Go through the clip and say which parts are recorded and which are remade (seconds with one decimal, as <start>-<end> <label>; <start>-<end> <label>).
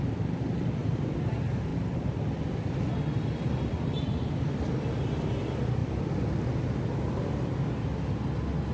0.0-1.7 recorded; 1.7-4.8 remade; 4.8-5.8 recorded; 5.8-6.6 remade; 6.6-8.7 recorded